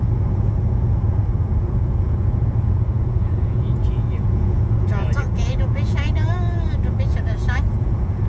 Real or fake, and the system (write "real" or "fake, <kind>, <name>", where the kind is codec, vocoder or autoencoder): fake, vocoder, Vocos